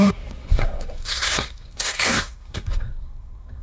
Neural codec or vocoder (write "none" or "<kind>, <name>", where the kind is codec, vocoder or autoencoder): codec, SNAC